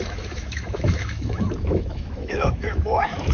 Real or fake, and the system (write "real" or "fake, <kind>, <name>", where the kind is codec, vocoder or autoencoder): fake, autoencoder, DAC-VAE